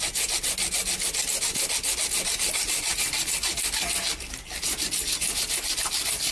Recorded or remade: recorded